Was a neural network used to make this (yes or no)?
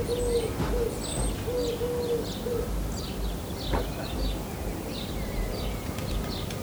no